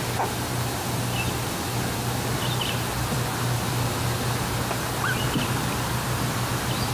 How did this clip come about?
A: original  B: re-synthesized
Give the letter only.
A